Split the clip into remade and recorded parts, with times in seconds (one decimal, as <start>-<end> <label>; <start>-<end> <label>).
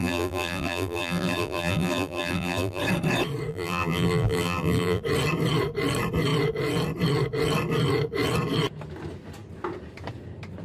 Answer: 0.0-2.8 remade; 2.8-3.5 recorded; 3.5-5.0 remade; 5.0-10.6 recorded